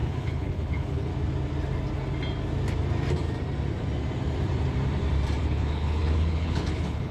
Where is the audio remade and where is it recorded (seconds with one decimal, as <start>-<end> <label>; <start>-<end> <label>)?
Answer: 0.0-1.1 remade; 1.1-5.4 recorded; 5.4-7.1 remade